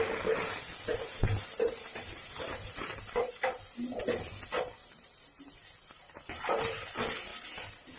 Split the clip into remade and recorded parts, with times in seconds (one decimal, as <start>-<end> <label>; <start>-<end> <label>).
0.0-0.9 recorded; 0.9-4.0 remade; 4.0-4.8 recorded; 4.8-6.8 remade; 6.8-8.0 recorded